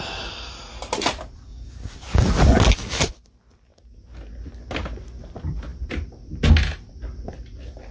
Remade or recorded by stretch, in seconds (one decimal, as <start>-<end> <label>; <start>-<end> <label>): 0.0-1.5 remade; 1.5-2.2 recorded; 2.2-3.7 remade; 3.7-5.2 recorded; 5.2-7.9 remade